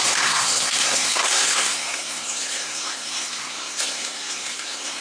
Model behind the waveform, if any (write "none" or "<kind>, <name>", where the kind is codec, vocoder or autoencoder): codec, SNAC